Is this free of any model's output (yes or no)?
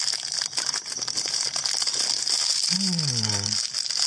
yes